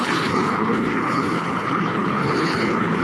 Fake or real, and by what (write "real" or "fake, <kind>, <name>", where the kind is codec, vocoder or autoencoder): fake, codec, HILCodec